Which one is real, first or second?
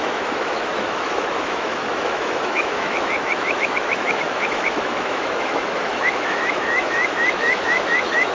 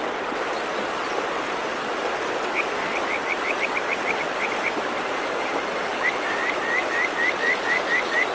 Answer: second